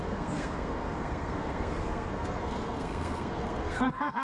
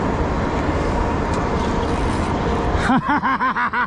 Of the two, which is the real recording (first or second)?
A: second